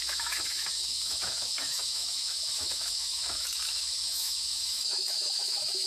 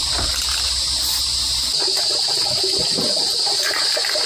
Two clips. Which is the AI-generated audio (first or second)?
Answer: first